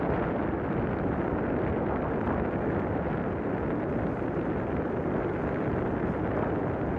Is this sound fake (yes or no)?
no